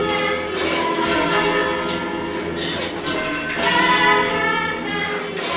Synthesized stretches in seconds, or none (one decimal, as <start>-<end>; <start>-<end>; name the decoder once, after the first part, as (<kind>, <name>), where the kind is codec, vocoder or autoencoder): none